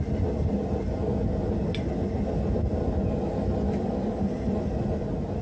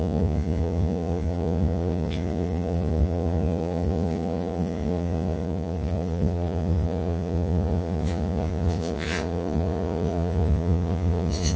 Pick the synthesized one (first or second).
second